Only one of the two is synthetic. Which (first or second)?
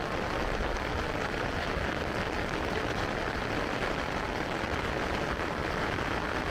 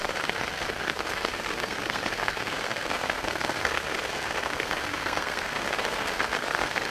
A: second